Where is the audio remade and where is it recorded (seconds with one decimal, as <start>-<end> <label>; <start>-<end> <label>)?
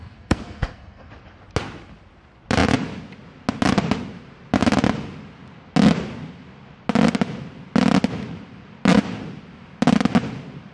0.0-1.1 remade; 1.1-10.7 recorded